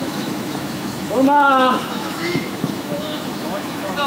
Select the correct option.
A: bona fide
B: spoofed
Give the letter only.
B